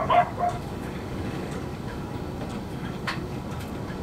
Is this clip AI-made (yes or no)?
yes